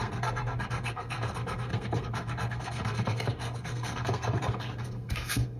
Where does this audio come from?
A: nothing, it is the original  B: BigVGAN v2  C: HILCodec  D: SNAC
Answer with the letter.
D